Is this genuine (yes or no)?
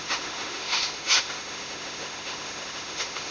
no